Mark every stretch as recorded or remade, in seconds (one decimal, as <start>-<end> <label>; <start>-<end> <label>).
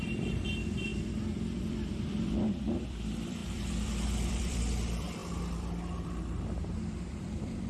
0.0-7.7 remade